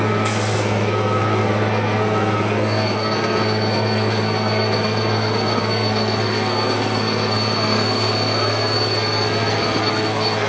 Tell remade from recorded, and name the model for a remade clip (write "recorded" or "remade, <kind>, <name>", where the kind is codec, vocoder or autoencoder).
remade, codec, SNAC